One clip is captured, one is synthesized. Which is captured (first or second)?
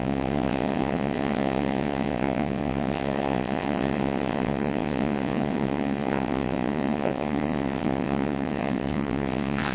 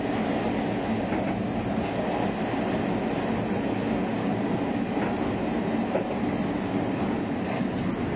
second